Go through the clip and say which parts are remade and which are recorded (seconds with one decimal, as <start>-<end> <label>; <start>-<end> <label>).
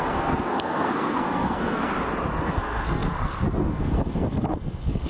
0.0-1.9 remade; 1.9-2.4 recorded; 2.4-5.1 remade